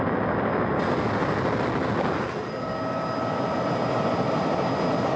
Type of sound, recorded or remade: recorded